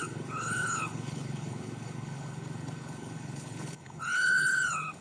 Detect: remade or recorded remade